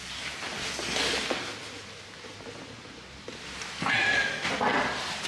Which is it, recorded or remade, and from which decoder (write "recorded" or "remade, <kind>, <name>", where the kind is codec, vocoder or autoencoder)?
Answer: recorded